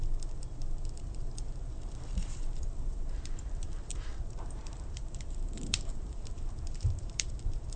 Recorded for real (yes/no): no